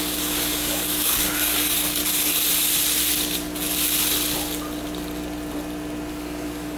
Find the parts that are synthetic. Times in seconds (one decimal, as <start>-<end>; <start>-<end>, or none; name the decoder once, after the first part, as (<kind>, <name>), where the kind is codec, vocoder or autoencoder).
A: 0.0-2.0 (codec, DAC); 6.1-6.8